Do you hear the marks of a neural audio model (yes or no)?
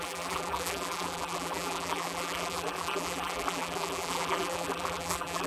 yes